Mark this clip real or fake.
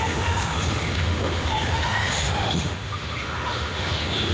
fake